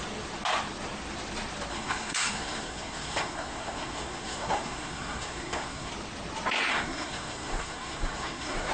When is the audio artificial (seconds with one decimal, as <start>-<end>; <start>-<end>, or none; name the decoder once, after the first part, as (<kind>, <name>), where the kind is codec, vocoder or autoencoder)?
1.7-5.9 (codec, SNAC); 6.7-8.7